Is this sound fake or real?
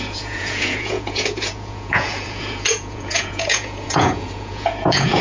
fake